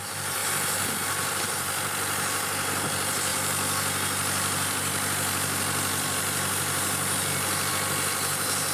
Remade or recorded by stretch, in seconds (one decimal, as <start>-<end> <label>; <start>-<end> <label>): 0.0-8.7 recorded